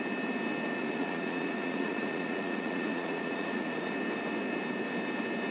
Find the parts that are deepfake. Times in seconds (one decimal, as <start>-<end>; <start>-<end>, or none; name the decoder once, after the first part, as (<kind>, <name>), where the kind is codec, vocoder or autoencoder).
0.7-3.9 (vocoder, Vocos)